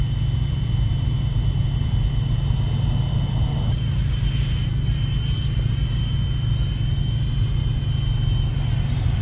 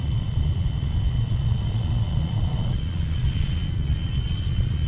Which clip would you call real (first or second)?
first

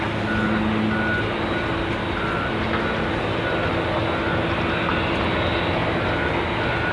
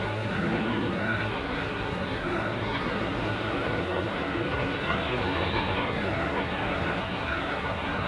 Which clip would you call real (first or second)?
first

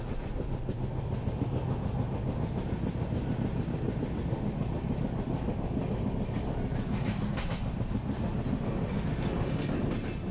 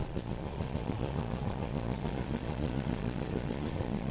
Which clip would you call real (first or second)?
first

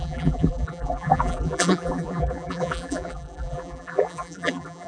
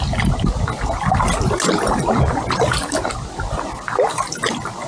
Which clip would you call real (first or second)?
second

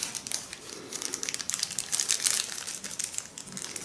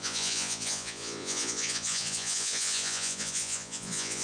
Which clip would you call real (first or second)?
first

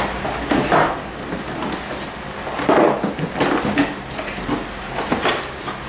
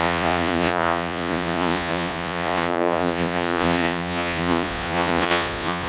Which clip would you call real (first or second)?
first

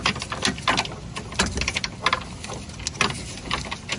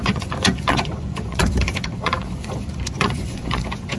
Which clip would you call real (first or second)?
first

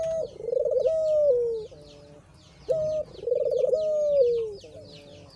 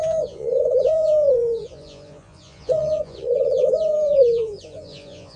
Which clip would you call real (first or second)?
first